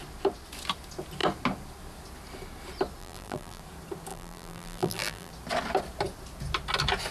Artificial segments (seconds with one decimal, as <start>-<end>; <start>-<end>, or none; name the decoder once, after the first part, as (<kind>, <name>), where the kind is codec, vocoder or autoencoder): 3.0-3.6 (vocoder, BigVGAN v2); 4.1-5.3